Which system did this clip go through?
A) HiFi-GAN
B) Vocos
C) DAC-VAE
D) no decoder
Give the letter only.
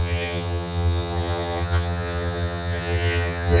A